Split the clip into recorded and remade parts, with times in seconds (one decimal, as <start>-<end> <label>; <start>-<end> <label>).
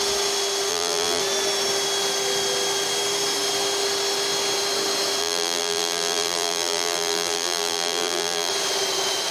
0.0-0.7 recorded; 0.7-1.2 remade; 1.2-5.2 recorded; 5.2-8.5 remade; 8.5-9.3 recorded